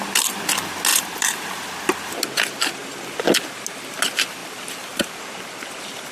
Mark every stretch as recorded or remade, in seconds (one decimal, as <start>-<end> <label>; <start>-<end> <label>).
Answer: 0.0-0.9 recorded; 0.9-1.6 remade; 1.6-4.4 recorded; 4.4-5.2 remade; 5.2-6.1 recorded

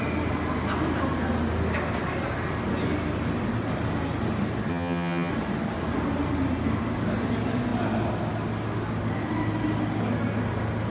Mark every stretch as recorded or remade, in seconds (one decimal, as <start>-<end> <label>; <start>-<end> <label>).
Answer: 0.0-4.7 recorded; 4.7-5.3 remade; 5.3-10.9 recorded

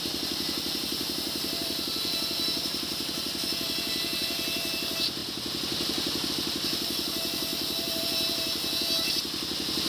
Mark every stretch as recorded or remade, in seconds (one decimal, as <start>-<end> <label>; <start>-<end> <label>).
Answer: 0.0-9.9 recorded

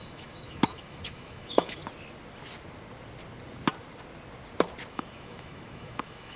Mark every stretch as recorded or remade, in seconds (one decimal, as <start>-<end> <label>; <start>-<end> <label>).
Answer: 0.0-1.8 remade; 1.8-4.9 recorded; 4.9-6.4 remade

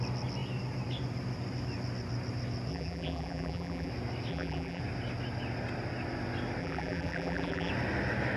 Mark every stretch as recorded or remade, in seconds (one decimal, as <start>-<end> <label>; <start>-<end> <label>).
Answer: 0.0-2.7 recorded; 2.7-3.9 remade; 3.9-4.3 recorded; 4.3-4.8 remade; 4.8-6.6 recorded; 6.6-7.7 remade; 7.7-8.4 recorded

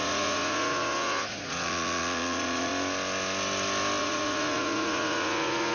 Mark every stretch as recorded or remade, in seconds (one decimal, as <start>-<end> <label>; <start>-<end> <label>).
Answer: 0.0-2.7 remade; 2.7-4.0 recorded; 4.0-5.7 remade